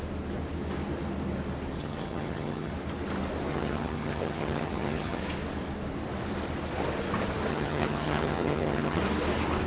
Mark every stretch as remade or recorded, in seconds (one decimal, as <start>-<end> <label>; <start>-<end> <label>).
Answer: 0.0-1.8 recorded; 1.8-2.7 remade; 2.7-3.5 recorded; 3.5-5.2 remade; 5.2-7.5 recorded; 7.5-9.0 remade; 9.0-9.7 recorded